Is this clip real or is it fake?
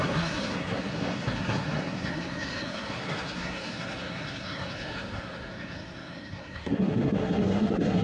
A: fake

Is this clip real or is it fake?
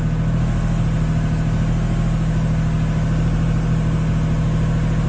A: real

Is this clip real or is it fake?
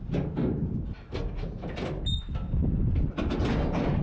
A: real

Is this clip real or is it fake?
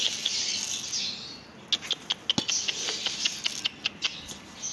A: real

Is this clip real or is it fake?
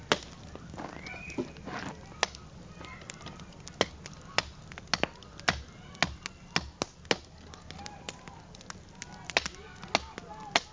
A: real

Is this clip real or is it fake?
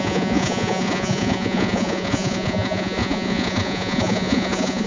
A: fake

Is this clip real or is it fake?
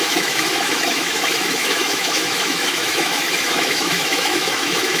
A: fake